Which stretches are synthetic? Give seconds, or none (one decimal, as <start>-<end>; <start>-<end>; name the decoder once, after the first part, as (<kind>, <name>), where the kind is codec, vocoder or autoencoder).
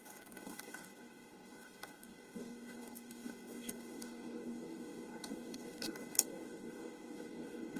0.0-7.8 (codec, DAC)